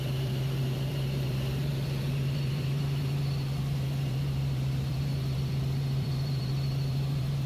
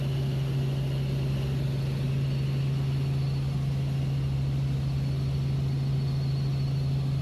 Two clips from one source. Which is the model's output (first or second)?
first